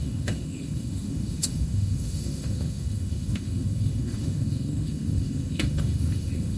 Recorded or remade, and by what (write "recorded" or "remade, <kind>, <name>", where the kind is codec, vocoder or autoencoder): remade, autoencoder, DAC-VAE